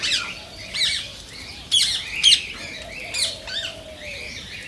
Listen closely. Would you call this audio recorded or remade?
recorded